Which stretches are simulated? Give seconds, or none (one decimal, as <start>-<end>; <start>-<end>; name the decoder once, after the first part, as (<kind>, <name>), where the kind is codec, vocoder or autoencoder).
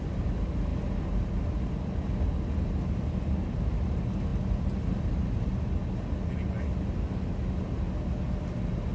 none